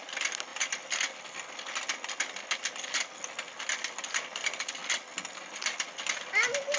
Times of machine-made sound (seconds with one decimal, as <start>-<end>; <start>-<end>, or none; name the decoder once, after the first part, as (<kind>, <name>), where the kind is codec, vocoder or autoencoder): none